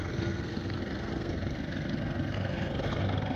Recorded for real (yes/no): no